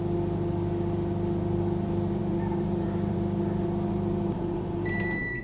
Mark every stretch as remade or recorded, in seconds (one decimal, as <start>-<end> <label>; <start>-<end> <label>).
0.0-2.2 recorded; 2.2-5.4 remade